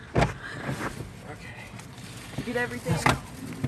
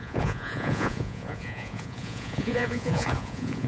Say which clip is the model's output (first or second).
second